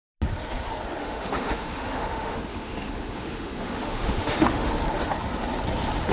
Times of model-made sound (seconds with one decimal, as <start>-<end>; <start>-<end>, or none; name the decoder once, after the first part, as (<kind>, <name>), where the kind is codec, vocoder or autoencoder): 1.0-4.7 (autoencoder, DAC-VAE)